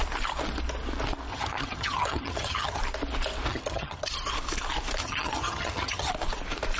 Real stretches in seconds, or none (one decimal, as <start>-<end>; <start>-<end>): 0.0-1.3; 2.8-3.5; 4.1-5.0; 6.1-6.8

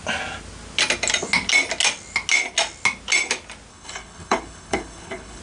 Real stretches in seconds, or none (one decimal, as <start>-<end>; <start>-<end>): 0.0-3.7